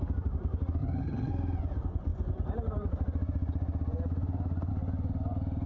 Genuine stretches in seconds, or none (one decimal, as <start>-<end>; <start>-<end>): 0.0-0.8; 1.3-5.7

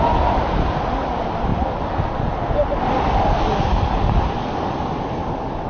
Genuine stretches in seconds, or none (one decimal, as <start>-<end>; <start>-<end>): 0.0-5.7

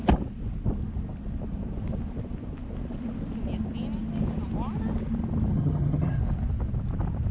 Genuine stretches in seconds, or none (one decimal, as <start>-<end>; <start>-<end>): 0.0-5.5; 6.2-7.3

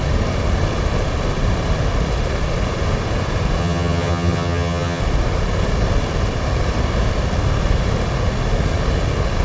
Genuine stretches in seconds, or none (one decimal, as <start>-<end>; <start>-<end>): 0.0-3.6; 5.0-9.4

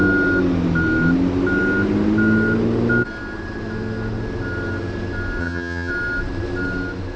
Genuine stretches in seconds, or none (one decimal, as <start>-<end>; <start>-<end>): 0.0-5.4; 5.9-7.2

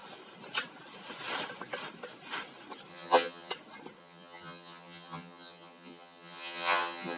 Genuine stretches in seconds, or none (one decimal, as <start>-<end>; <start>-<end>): 0.0-2.9; 3.5-4.0